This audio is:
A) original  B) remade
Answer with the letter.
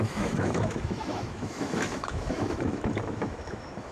B